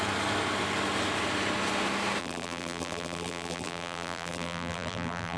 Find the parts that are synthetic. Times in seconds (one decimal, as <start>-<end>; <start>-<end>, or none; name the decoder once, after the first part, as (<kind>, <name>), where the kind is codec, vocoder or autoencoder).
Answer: 2.2-5.4 (vocoder, BigVGAN v2)